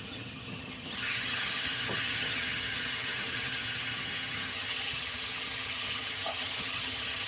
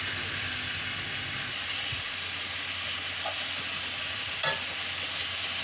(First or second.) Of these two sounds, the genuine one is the second